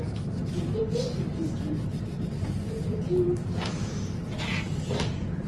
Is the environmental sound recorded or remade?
recorded